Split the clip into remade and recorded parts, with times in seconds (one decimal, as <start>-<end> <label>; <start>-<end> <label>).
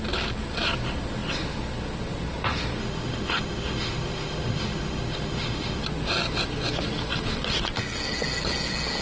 0.0-2.8 recorded; 2.8-5.8 remade; 5.8-9.0 recorded